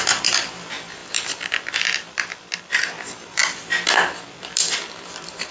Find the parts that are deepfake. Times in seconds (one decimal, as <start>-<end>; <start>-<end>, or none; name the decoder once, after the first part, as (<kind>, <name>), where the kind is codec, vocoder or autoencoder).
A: 0.0-3.4 (vocoder, BigVGAN v2); 4.4-5.5